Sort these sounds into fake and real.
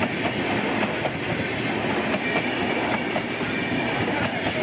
real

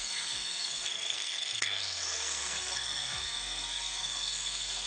fake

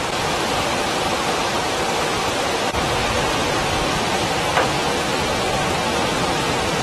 real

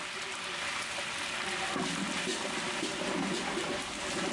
fake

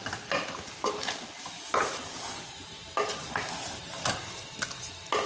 real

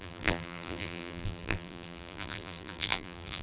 fake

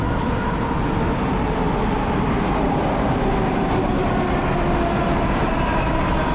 real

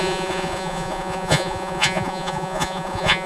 fake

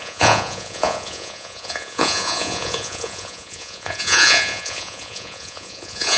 fake